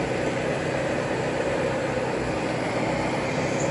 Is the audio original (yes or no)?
yes